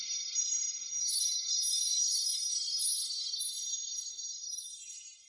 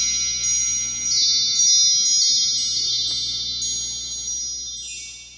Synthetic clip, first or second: first